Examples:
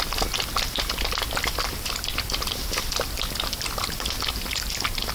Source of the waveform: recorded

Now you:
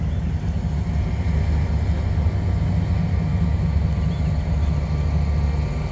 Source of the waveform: recorded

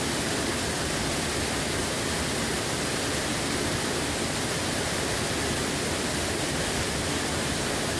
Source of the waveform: recorded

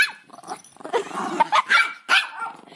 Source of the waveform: recorded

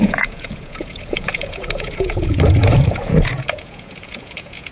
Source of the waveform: remade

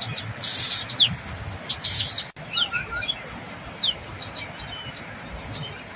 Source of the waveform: recorded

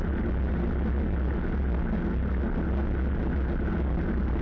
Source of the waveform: recorded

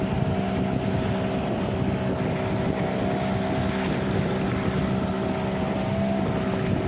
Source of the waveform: recorded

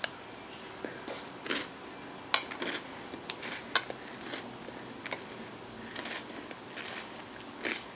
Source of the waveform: recorded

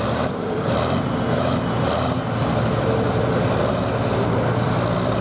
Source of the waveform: recorded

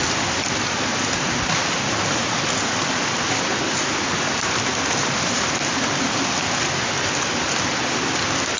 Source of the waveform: recorded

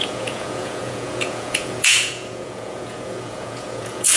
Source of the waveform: remade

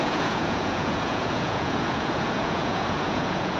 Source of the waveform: remade